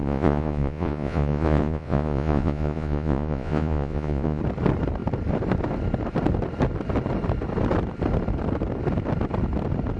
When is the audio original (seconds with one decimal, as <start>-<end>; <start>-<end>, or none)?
4.4-10.0